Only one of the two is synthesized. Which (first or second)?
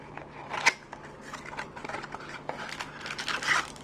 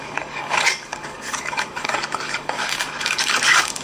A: second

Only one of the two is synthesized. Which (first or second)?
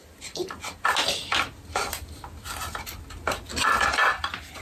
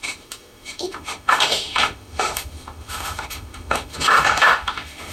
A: second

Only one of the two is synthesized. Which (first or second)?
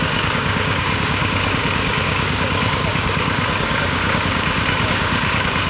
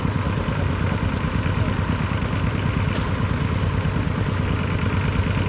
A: first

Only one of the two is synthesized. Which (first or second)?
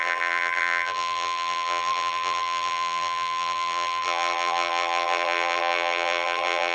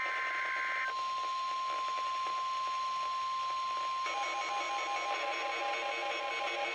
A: first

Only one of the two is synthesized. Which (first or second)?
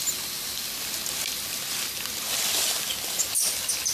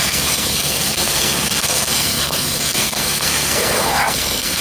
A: second